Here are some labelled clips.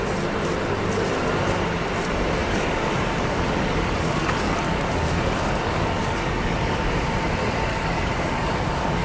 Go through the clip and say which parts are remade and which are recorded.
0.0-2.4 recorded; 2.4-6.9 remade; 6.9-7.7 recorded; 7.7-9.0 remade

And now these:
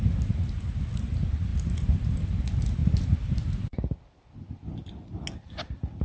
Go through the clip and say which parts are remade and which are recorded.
0.0-2.8 recorded; 2.8-3.5 remade; 3.5-6.0 recorded

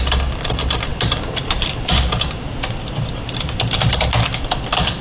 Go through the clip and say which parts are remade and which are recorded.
0.0-5.0 remade

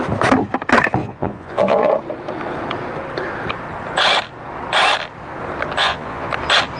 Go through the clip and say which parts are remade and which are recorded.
0.0-1.0 recorded; 1.0-1.9 remade; 1.9-5.8 recorded; 5.8-6.3 remade; 6.3-6.8 recorded

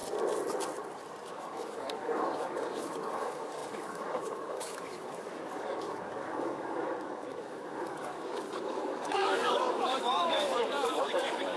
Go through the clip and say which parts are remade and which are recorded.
0.0-1.3 recorded; 1.3-11.6 remade

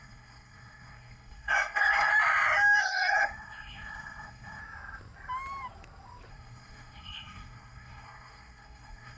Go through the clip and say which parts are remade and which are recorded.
0.0-2.1 remade; 2.1-2.8 recorded; 2.8-4.6 remade; 4.6-6.3 recorded; 6.3-9.2 remade